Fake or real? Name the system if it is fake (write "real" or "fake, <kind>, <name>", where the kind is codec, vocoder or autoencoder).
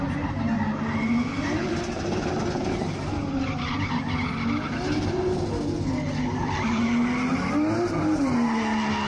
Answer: real